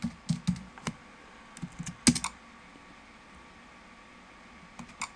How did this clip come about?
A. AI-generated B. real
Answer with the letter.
B